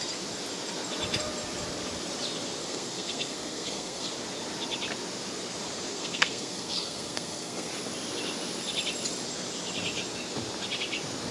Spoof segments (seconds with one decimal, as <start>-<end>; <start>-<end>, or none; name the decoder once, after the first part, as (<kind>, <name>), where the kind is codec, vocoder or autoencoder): 2.6-4.1 (codec, SNAC); 5.9-7.7